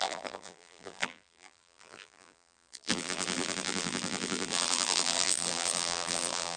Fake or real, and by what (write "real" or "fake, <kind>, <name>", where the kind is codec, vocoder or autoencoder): fake, vocoder, BigVGAN v2